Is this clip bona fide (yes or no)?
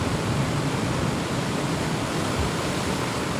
no